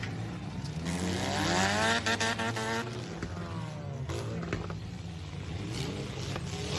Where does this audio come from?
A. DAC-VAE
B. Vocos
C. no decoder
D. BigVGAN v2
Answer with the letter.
C